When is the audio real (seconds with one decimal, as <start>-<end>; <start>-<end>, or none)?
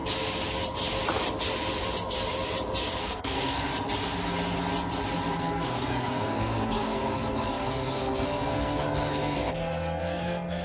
0.0-3.0; 3.7-5.4